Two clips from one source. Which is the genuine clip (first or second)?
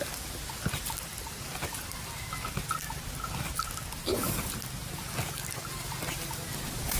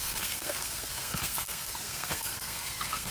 first